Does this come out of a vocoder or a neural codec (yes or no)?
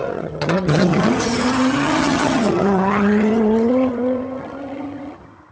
yes